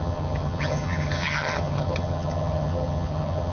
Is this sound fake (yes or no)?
yes